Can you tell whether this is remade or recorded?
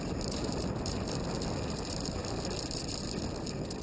recorded